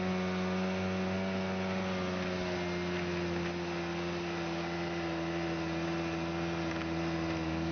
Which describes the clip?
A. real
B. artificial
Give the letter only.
A